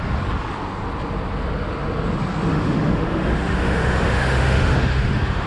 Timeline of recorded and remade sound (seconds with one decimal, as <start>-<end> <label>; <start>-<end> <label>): 0.0-2.5 recorded; 2.5-5.5 remade